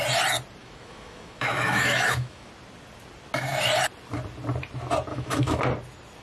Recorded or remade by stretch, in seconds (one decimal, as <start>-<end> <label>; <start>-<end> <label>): 0.0-0.6 recorded; 0.6-2.5 remade; 2.5-5.1 recorded; 5.1-5.6 remade; 5.6-6.2 recorded